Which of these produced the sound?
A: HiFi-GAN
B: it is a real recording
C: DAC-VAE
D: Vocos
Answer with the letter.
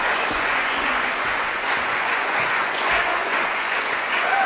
D